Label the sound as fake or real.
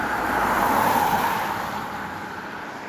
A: fake